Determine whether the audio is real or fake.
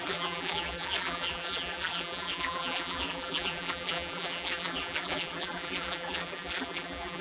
fake